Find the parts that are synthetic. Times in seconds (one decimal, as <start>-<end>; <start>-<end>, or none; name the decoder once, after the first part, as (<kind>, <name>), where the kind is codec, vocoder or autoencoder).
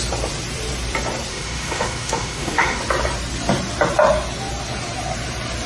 1.3-2.8 (autoencoder, DAC-VAE)